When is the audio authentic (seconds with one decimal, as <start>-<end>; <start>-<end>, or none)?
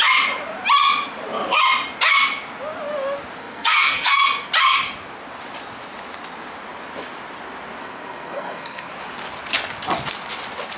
0.0-3.4; 4.5-7.8; 8.9-10.8